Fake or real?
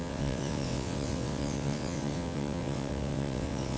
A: fake